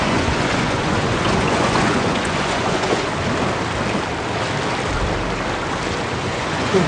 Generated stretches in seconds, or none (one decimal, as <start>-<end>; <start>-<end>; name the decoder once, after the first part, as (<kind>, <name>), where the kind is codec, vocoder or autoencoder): 0.0-3.1 (vocoder, Vocos); 6.2-6.9